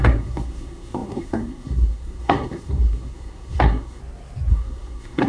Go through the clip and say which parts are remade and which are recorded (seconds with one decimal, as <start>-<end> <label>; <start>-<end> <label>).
0.0-4.0 remade; 4.0-4.5 recorded; 4.5-5.3 remade